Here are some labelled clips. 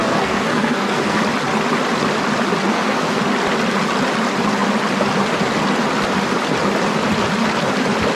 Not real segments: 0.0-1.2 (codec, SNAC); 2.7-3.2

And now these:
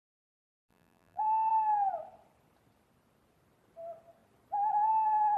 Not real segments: 0.0-1.5 (vocoder, BigVGAN v2)

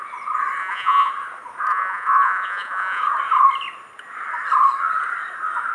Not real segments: 0.6-1.1 (vocoder, Vocos); 1.7-3.0

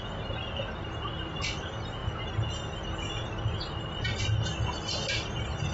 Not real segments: none